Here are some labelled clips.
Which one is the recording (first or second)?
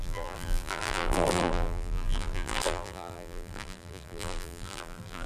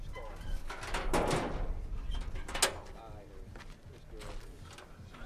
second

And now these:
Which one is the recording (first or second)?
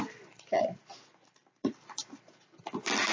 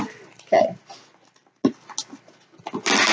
second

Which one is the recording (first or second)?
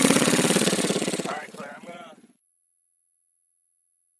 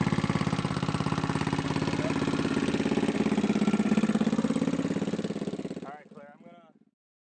second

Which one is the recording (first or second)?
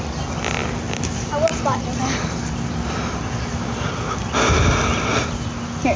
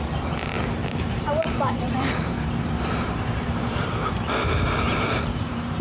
first